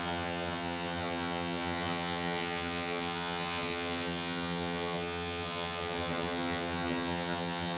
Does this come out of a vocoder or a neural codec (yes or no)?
yes